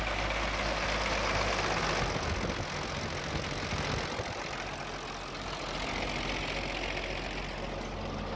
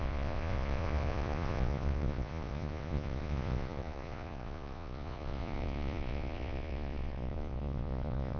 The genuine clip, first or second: first